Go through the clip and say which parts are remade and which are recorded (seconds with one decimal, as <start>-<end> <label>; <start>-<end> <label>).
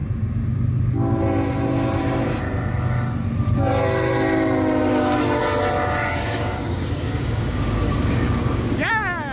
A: 0.0-4.9 recorded; 4.9-5.4 remade; 5.4-6.2 recorded; 6.2-8.9 remade; 8.9-9.3 recorded